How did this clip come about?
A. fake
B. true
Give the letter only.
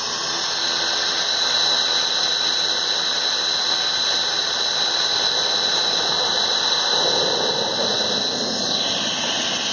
B